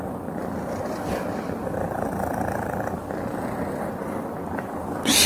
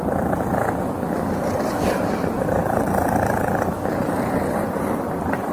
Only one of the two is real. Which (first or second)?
first